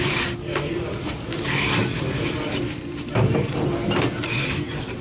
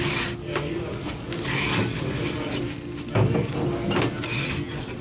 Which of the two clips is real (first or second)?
second